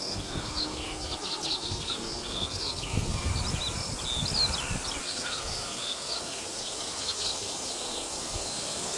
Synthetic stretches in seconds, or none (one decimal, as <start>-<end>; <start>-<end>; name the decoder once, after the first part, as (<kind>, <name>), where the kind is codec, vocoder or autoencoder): 0.0-3.3 (codec, SNAC); 5.0-9.0